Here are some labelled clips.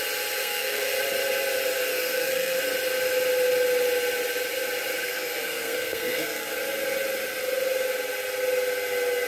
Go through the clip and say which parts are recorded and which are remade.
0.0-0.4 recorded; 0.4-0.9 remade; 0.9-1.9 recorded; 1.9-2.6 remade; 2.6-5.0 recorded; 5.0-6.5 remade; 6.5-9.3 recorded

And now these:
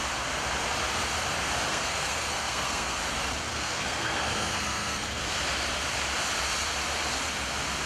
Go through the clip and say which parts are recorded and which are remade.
0.0-1.7 recorded; 1.7-3.0 remade; 3.0-3.5 recorded; 3.5-5.2 remade; 5.2-7.9 recorded

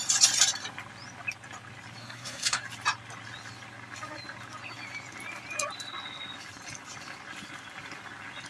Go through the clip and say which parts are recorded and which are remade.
0.0-2.0 recorded; 2.0-2.6 remade; 2.6-8.5 recorded

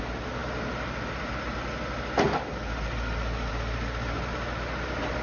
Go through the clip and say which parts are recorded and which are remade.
0.0-5.2 recorded

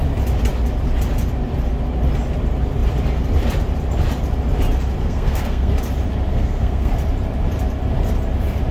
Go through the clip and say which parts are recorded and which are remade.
0.0-5.0 recorded; 5.0-5.7 remade; 5.7-6.3 recorded; 6.3-6.9 remade; 6.9-8.7 recorded